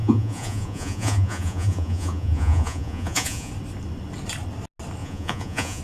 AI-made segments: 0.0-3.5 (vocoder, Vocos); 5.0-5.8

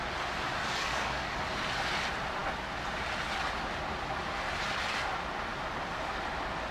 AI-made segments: 0.6-1.4 (codec, DAC)

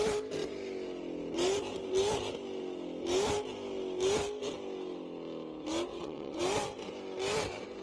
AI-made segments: 5.9-6.4 (vocoder, WaveNeXt)